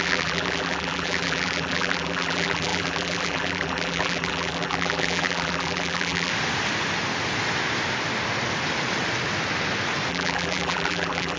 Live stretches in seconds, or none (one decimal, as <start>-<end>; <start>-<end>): 6.3-10.1